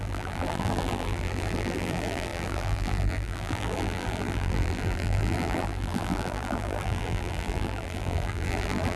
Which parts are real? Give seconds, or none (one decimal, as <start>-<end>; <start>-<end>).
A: none

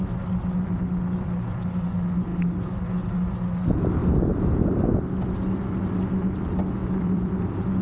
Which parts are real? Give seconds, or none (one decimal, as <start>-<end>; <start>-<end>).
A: 0.0-6.8

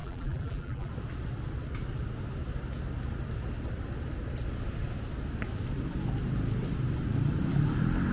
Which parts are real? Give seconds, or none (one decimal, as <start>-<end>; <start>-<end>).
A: 0.9-8.1

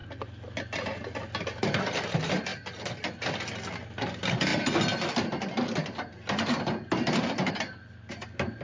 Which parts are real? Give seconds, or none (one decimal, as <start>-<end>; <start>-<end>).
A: 0.0-8.6

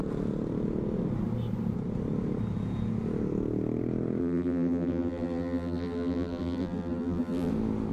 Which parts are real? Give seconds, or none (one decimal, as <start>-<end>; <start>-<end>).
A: 0.0-4.2; 7.5-7.9

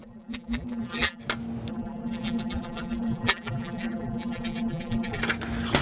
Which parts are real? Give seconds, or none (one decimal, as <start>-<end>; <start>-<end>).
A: 1.2-1.7; 5.2-5.8

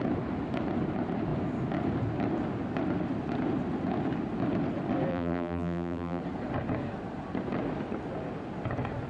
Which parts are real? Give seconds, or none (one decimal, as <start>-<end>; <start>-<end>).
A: 0.0-5.1; 6.2-9.1

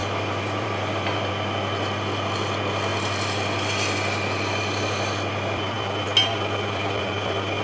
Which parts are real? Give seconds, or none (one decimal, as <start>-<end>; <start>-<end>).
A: 1.3-6.3